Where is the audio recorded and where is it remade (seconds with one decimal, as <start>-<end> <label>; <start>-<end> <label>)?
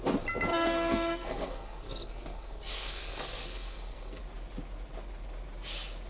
0.0-0.5 recorded; 0.5-4.2 remade; 4.2-6.1 recorded